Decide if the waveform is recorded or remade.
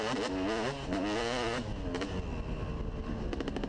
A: recorded